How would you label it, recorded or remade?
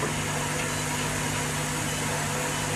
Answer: recorded